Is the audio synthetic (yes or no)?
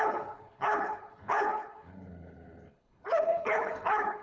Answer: yes